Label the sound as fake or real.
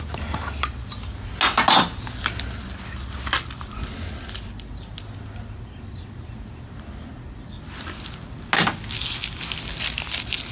real